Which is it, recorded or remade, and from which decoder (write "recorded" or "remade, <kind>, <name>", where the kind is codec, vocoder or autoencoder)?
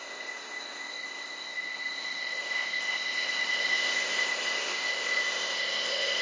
remade, codec, ZipCodec